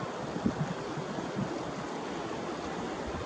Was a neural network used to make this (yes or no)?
no